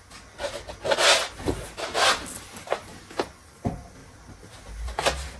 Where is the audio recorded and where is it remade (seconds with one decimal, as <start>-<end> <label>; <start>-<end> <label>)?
0.0-4.0 recorded; 4.0-4.5 remade; 4.5-5.4 recorded